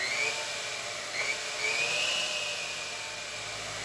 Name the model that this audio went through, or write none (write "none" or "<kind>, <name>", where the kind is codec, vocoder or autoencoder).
none